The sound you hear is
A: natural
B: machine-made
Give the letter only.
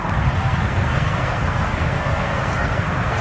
B